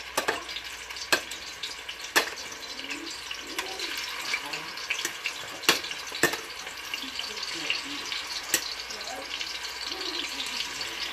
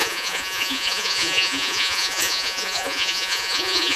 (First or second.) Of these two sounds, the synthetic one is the second